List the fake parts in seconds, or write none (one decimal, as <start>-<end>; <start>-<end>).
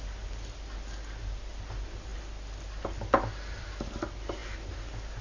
none